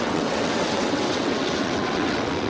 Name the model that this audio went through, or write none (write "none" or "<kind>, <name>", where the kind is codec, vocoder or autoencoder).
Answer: vocoder, WaveNeXt